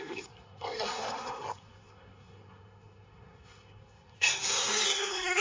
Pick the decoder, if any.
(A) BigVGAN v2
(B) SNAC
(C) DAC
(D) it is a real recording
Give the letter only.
B